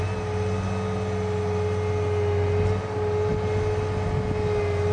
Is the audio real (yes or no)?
yes